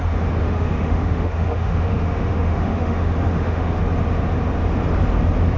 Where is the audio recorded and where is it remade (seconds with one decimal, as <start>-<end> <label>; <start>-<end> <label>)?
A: 0.0-0.4 recorded; 0.4-3.8 remade; 3.8-5.6 recorded